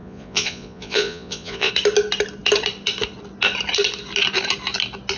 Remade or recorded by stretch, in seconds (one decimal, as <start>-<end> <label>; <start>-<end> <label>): 0.0-1.7 remade; 1.7-5.2 recorded